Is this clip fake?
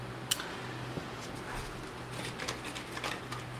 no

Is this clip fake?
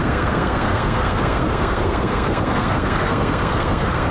yes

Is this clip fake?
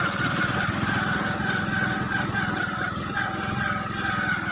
no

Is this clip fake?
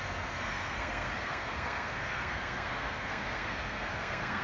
yes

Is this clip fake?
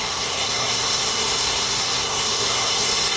yes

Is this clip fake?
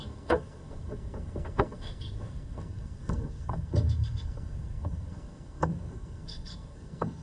yes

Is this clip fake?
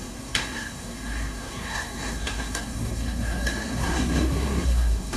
yes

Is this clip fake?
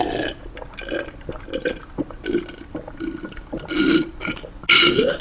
no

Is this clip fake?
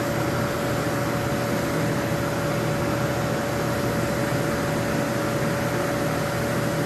no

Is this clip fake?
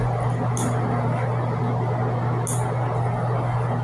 no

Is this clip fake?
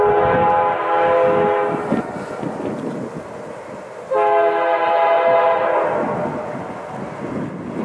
no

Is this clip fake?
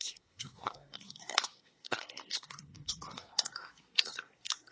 yes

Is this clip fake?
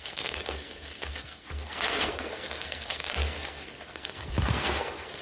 yes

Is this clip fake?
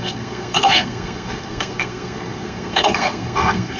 yes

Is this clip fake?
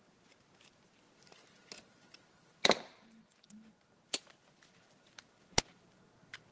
no